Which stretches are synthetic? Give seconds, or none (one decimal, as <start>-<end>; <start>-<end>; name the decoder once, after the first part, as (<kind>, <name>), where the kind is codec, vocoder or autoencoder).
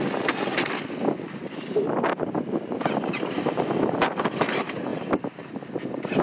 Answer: none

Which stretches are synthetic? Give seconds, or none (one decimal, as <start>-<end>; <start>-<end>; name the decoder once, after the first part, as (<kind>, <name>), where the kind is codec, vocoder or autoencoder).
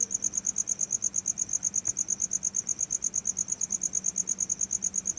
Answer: none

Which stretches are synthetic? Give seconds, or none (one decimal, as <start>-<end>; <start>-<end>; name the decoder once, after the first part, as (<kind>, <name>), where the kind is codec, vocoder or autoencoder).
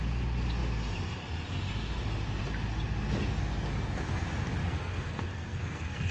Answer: 4.6-6.1 (codec, SNAC)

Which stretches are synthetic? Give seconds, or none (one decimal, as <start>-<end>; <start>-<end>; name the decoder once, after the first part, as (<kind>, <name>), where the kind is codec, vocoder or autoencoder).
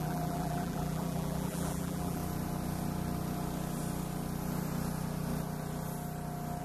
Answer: 0.0-2.2 (vocoder, BigVGAN v2)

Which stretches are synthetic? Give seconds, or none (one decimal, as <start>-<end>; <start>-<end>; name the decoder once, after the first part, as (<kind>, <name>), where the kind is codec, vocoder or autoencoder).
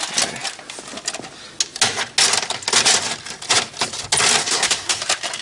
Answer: 4.4-5.0 (codec, SNAC)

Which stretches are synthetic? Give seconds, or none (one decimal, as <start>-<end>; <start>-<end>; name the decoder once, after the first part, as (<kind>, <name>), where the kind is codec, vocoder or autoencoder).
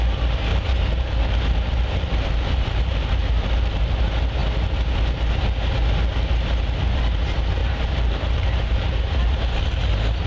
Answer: 0.5-4.0 (vocoder, BigVGAN v2); 7.6-9.4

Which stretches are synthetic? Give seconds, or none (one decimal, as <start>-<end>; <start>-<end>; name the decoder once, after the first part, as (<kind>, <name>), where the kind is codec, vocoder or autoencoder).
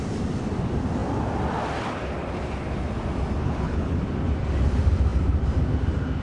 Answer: 3.4-4.0 (codec, HILCodec)